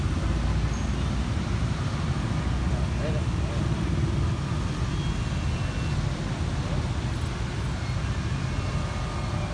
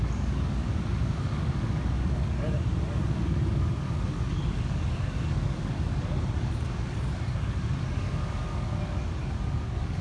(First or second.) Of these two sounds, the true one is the first